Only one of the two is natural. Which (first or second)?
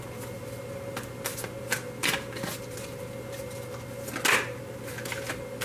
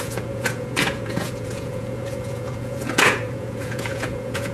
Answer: first